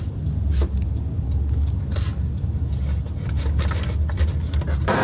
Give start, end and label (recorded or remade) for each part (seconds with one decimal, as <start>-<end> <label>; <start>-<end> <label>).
0.0-5.0 recorded